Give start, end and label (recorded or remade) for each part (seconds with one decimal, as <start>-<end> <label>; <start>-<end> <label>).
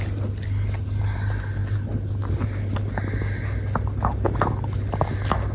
0.0-5.5 recorded